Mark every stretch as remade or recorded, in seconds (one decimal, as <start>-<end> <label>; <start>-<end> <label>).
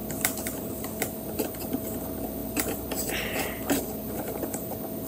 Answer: 0.0-0.6 remade; 0.6-2.4 recorded; 2.4-4.2 remade; 4.2-5.1 recorded